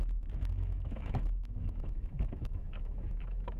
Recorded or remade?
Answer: remade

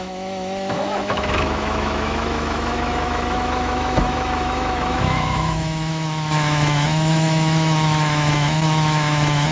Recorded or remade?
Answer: remade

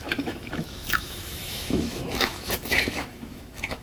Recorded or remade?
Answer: remade